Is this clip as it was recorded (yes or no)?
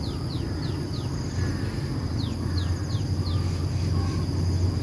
yes